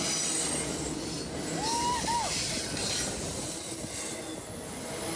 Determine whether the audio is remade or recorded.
recorded